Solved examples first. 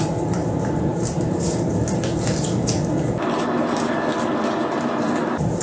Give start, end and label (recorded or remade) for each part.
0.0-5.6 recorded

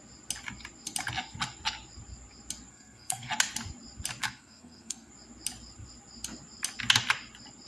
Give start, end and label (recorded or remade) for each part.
0.0-2.7 recorded; 2.7-3.3 remade; 3.3-4.2 recorded; 4.2-5.1 remade; 5.1-7.7 recorded